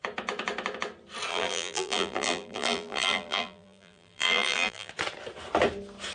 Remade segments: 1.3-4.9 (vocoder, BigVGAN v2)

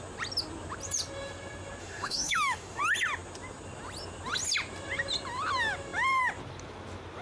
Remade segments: 1.8-2.8 (autoencoder, DAC-VAE)